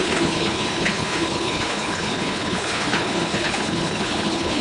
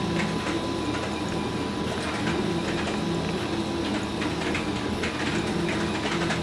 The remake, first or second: first